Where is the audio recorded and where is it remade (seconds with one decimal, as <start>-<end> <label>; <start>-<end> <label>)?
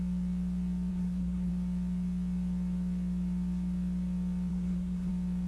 0.0-0.9 recorded; 0.9-1.5 remade; 1.5-4.5 recorded; 4.5-5.1 remade; 5.1-5.5 recorded